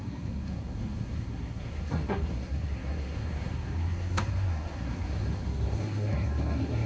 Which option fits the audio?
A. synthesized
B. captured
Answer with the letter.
A